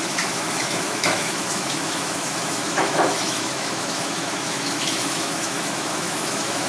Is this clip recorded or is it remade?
remade